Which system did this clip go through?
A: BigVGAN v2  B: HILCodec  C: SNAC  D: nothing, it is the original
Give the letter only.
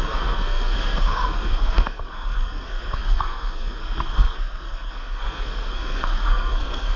C